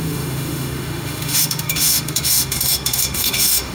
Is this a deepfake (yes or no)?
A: yes